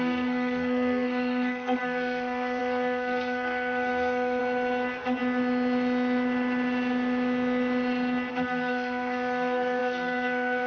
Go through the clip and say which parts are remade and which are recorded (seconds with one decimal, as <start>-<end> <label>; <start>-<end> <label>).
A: 0.0-4.4 remade; 4.4-8.3 recorded; 8.3-10.7 remade